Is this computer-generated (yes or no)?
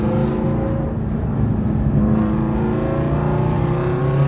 no